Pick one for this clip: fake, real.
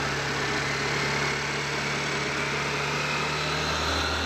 real